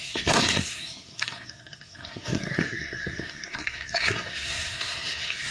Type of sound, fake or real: fake